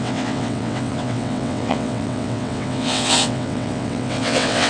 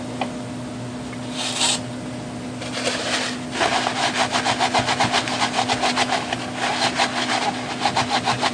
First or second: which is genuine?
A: second